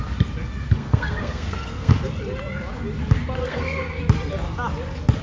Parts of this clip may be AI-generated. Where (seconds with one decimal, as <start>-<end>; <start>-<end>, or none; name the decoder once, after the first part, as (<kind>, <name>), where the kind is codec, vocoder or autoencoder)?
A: 0.8-1.9 (codec, SNAC); 3.4-4.0

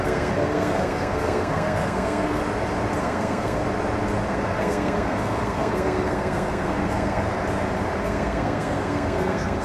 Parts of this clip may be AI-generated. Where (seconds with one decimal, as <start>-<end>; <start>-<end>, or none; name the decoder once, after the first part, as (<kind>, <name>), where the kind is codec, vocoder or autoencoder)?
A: 0.0-2.4 (codec, SNAC); 3.0-3.6; 4.3-7.2; 8.0-9.6

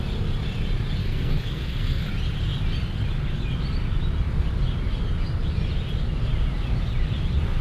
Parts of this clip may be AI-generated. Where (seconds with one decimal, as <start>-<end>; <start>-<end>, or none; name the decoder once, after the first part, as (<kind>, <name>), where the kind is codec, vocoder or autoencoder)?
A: 1.0-2.1 (codec, SNAC)

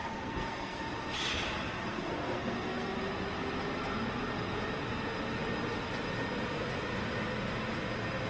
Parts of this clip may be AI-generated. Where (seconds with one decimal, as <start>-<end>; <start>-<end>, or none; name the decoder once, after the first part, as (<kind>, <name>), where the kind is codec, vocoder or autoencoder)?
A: 0.0-0.8 (codec, SNAC); 1.9-3.0

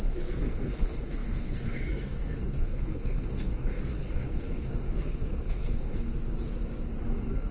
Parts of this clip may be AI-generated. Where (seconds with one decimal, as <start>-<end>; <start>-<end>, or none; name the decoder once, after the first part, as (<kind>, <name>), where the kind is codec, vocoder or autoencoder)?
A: 0.0-6.1 (codec, SNAC); 7.0-7.5

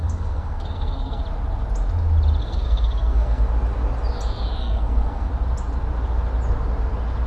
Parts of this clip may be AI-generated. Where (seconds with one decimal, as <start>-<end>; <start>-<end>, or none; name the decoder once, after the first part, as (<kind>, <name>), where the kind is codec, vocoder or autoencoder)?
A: 0.0-1.2 (codec, SNAC); 2.4-3.4; 4.6-5.3

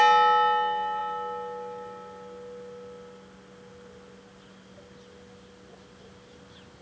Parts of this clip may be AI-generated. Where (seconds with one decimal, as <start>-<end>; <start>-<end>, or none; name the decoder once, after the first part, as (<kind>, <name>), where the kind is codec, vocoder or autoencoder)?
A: none

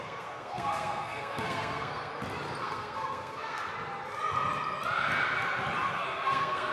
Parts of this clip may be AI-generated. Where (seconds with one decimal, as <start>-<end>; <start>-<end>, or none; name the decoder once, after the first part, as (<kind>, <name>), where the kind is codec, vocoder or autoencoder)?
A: 0.0-2.1 (codec, SNAC); 2.6-3.7; 5.9-6.7